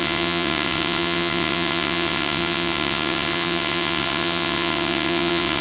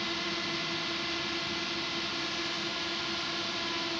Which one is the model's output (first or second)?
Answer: first